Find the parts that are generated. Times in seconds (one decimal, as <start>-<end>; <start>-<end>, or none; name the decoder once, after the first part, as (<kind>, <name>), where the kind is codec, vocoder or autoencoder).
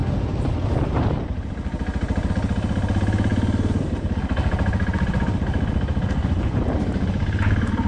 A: none